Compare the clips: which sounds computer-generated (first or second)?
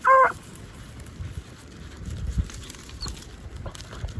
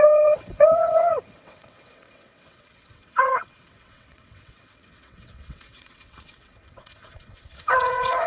second